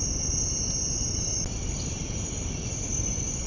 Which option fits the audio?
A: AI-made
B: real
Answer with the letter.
B